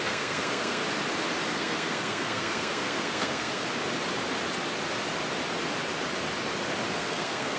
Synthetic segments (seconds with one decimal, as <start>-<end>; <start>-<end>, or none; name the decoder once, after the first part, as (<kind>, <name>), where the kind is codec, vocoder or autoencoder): 0.0-0.8 (codec, SNAC); 1.5-3.6; 6.9-7.6